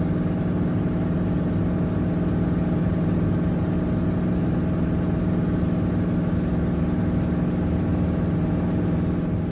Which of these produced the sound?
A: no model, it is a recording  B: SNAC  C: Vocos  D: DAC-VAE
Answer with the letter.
A